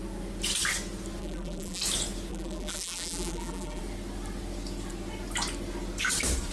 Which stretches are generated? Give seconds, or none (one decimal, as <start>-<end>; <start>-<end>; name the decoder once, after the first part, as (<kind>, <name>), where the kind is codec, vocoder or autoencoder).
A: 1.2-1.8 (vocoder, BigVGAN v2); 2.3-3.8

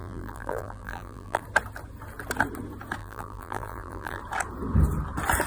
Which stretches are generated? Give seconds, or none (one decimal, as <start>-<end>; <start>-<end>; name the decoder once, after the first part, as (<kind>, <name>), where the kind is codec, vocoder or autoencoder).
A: 0.0-1.4 (vocoder, BigVGAN v2); 3.0-4.2

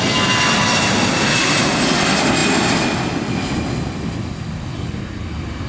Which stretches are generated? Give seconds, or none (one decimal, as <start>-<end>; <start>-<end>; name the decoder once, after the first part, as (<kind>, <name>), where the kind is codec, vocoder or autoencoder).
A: none

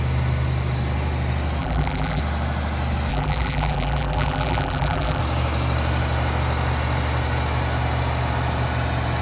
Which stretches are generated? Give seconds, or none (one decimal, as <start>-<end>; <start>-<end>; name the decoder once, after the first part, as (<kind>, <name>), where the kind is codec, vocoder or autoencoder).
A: 1.6-2.2 (vocoder, BigVGAN v2); 3.1-5.2